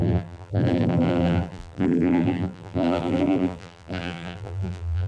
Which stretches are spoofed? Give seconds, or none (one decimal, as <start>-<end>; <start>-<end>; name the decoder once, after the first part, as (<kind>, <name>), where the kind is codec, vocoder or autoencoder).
0.0-5.1 (vocoder, BigVGAN v2)